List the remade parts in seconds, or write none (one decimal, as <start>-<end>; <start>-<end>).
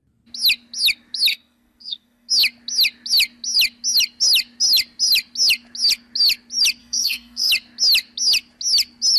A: 1.3-2.3; 6.8-7.5